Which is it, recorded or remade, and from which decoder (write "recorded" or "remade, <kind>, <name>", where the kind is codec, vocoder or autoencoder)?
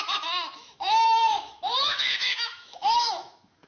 remade, autoencoder, DAC-VAE